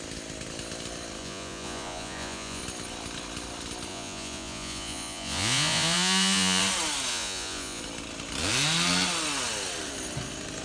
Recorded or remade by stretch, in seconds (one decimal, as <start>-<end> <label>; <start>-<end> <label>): 0.0-1.2 recorded; 1.2-2.6 remade; 2.6-3.9 recorded; 3.9-6.6 remade; 6.6-7.1 recorded; 7.1-7.8 remade; 7.8-10.6 recorded